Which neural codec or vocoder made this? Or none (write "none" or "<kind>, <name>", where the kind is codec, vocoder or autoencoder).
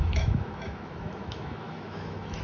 autoencoder, DAC-VAE